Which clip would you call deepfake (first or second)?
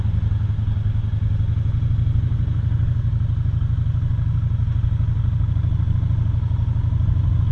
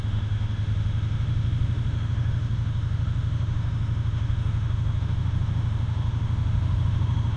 second